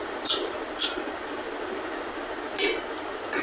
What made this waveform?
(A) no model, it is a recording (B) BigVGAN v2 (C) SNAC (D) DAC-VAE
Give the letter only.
A